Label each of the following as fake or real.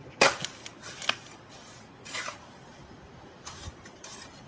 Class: real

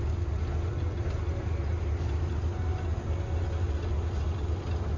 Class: real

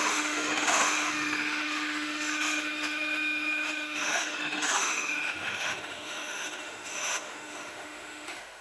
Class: fake